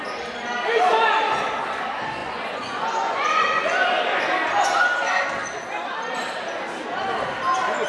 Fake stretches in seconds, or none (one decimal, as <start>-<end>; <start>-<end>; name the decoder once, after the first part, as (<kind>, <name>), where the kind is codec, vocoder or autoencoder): 2.2-4.0 (vocoder, Vocos)